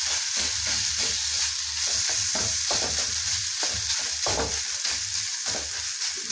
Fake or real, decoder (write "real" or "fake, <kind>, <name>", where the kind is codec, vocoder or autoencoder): fake, vocoder, BigVGAN v2